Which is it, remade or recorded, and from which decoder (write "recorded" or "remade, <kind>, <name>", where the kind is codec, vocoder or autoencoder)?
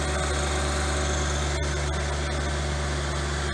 recorded